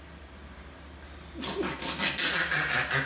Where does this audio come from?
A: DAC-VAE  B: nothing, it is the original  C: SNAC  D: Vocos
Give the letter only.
B